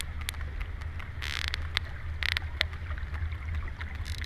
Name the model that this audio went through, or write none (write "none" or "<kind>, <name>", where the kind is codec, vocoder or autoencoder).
none